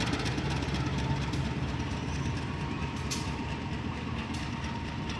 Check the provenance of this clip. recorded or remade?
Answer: remade